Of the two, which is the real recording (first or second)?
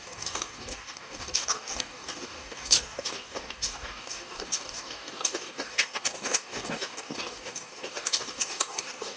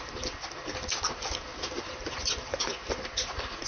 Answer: second